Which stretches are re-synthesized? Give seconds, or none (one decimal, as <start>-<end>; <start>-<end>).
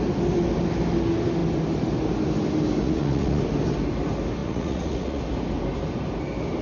2.8-3.4; 4.4-5.2